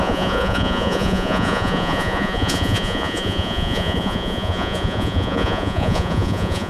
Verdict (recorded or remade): remade